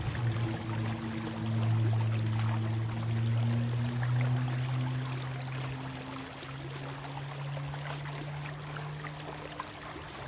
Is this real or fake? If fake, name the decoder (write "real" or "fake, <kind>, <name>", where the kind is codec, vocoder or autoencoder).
real